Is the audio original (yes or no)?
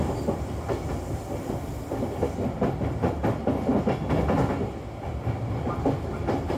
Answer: yes